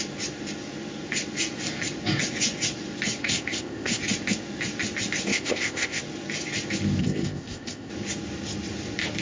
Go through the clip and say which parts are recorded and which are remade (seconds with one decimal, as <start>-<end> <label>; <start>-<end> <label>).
0.0-3.2 recorded; 3.2-4.0 remade; 4.0-5.3 recorded; 5.3-6.0 remade; 6.0-7.0 recorded; 7.0-7.9 remade; 7.9-9.2 recorded